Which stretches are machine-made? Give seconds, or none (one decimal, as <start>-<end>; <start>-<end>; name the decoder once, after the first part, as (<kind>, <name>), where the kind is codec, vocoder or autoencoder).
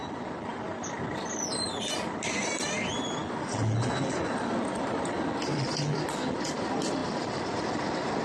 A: 7.0-7.6 (vocoder, BigVGAN v2)